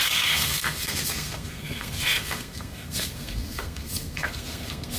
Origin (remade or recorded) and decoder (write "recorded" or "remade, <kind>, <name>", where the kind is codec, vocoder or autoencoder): remade, codec, SNAC